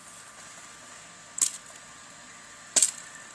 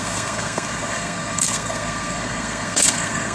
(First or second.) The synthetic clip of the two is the second